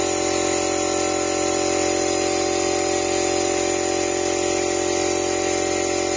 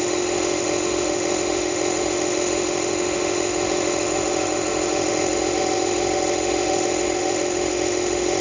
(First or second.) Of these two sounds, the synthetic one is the second